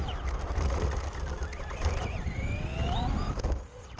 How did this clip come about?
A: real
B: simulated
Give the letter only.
A